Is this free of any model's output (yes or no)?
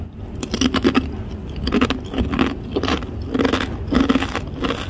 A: yes